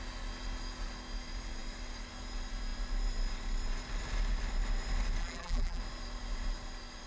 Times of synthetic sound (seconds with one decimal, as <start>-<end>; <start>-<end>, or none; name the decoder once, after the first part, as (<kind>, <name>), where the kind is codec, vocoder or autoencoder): 5.2-5.8 (vocoder, BigVGAN v2)